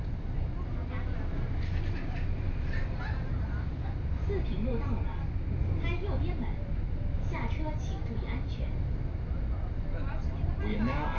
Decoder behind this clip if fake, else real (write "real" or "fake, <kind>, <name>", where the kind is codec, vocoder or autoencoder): real